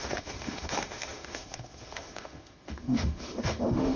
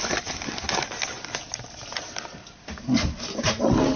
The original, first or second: second